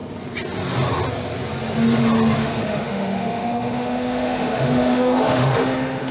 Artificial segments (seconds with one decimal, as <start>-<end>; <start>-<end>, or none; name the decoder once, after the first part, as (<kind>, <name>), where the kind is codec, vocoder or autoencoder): 2.4-6.1 (autoencoder, DAC-VAE)